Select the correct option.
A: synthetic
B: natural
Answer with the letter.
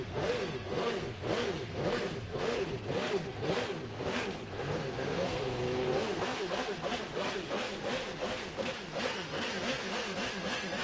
A